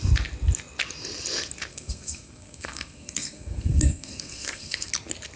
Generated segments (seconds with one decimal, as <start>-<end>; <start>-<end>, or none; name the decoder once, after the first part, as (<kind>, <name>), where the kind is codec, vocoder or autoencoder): 1.7-4.9 (codec, SNAC)